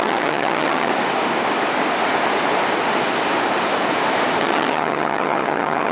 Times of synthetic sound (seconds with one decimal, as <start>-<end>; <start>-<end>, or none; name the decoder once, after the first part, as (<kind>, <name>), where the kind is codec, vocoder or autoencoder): 0.0-0.9 (vocoder, HiFi-GAN); 4.4-5.9